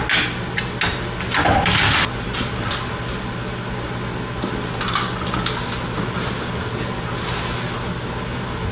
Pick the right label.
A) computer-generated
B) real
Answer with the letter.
B